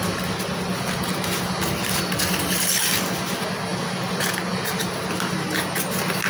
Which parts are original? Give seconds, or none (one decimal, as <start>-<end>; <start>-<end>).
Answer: 0.0-6.3